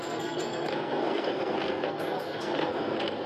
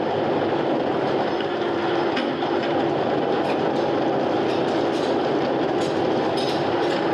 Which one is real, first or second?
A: second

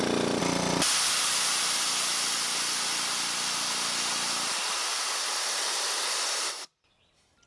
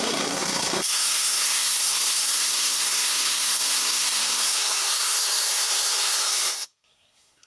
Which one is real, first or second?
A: first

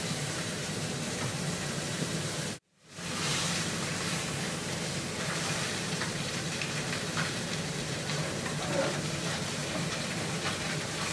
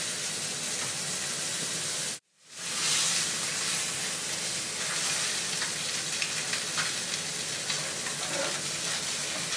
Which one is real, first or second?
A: second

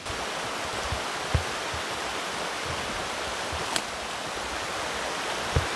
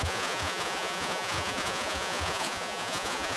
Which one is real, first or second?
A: first